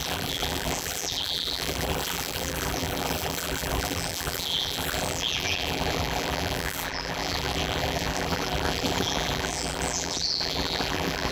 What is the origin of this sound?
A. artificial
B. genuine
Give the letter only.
A